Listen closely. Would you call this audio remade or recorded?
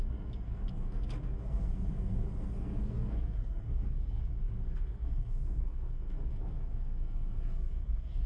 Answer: remade